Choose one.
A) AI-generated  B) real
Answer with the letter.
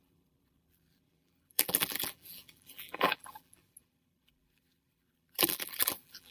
A